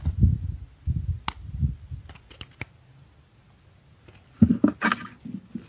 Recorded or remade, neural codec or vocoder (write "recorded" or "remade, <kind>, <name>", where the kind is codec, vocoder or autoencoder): recorded